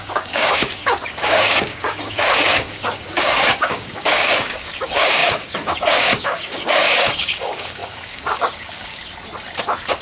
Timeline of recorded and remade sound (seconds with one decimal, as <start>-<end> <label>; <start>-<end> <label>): 0.0-9.0 remade; 9.0-10.0 recorded